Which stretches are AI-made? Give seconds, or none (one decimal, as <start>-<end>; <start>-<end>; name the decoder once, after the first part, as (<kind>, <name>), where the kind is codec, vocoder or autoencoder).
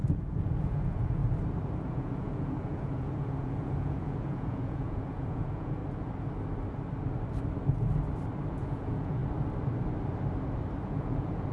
0.0-1.2 (vocoder, Vocos); 1.8-5.8; 8.5-9.2; 10.8-11.5